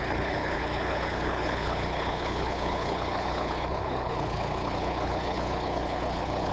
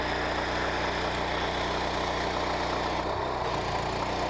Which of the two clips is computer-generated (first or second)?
first